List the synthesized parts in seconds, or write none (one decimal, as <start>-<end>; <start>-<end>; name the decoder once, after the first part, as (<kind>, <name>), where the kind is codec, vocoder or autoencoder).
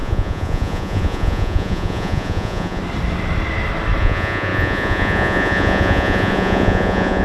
0.0-2.8 (vocoder, Vocos); 4.0-7.2